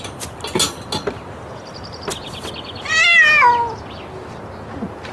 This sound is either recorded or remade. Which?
recorded